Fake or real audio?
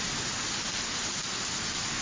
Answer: real